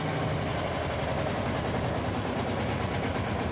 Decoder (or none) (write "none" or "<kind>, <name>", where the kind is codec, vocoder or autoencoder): none